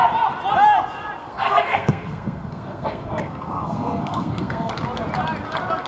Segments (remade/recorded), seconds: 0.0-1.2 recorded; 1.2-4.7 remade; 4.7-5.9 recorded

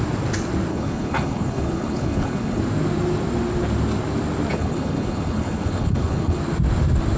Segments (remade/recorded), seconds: 0.0-0.7 recorded; 0.7-2.6 remade; 2.6-4.5 recorded; 4.5-6.4 remade; 6.4-7.2 recorded

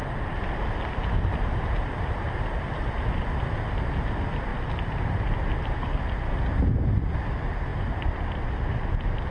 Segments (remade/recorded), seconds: 0.0-4.5 recorded; 4.5-5.5 remade; 5.5-7.7 recorded; 7.7-8.3 remade; 8.3-9.3 recorded

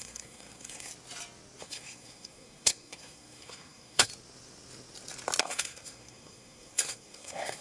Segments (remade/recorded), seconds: 0.0-0.9 remade; 0.9-1.6 recorded; 1.6-4.1 remade; 4.1-5.4 recorded; 5.4-7.6 remade